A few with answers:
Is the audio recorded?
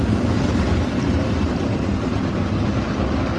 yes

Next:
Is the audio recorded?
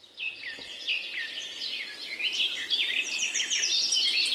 yes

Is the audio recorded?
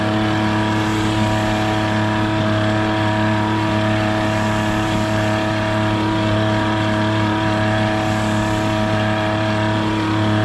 yes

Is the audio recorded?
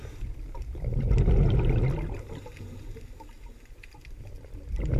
yes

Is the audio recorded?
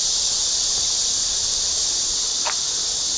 no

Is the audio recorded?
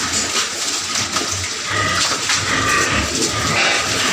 yes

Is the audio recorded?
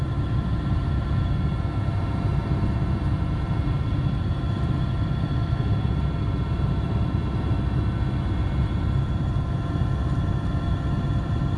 no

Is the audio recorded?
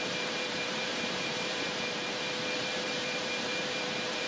no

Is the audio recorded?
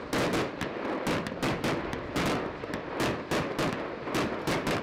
yes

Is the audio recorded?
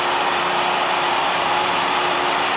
no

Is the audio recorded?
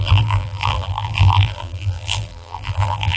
no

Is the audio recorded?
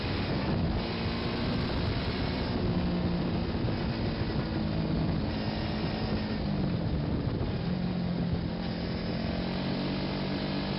yes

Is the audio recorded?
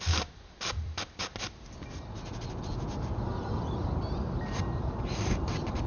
no